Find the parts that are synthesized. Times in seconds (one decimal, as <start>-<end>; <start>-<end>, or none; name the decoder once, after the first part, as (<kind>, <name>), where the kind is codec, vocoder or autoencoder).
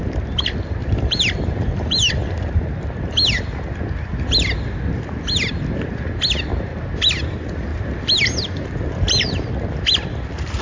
0.8-2.1 (vocoder, BigVGAN v2); 7.7-9.5